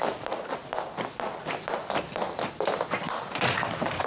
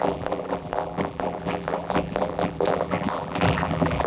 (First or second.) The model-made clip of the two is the second